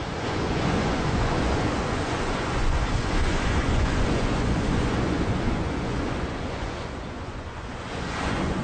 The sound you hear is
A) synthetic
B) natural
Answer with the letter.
A